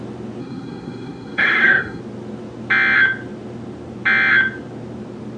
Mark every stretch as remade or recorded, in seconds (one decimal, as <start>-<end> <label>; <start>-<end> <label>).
0.0-0.4 recorded; 0.4-2.0 remade; 2.0-5.4 recorded